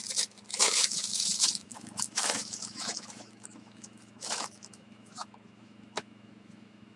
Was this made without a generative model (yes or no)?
no